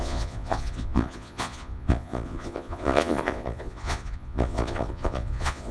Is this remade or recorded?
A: remade